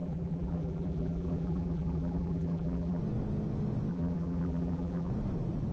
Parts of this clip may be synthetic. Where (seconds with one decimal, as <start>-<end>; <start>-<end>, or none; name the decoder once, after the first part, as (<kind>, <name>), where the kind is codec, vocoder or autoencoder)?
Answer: 0.0-3.0 (vocoder, BigVGAN v2); 3.9-5.1

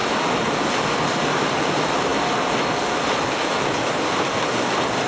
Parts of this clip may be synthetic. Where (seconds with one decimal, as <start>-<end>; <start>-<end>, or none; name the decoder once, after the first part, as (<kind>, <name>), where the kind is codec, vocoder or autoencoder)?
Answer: 0.0-0.6 (vocoder, BigVGAN v2); 2.1-3.5

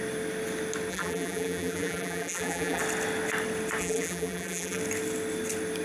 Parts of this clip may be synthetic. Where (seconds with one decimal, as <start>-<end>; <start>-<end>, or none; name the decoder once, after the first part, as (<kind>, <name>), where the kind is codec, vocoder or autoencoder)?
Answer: 0.9-2.8 (vocoder, BigVGAN v2); 3.8-4.8